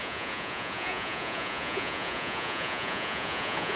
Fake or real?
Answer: fake